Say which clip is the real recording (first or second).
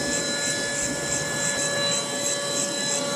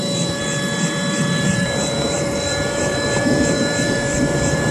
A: first